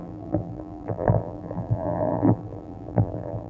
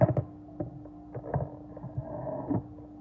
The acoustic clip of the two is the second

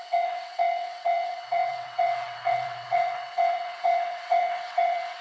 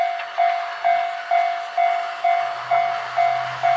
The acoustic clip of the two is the second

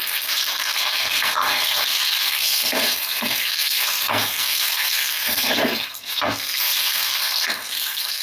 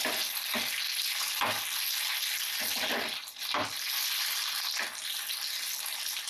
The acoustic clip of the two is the second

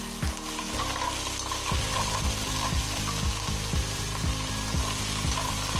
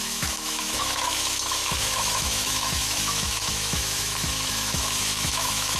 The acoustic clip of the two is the first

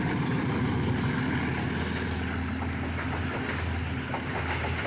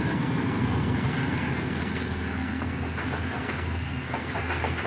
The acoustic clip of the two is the first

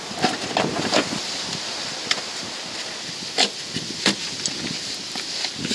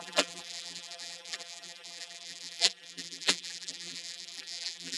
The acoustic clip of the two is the first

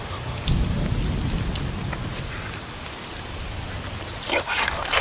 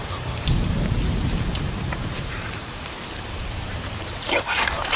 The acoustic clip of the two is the first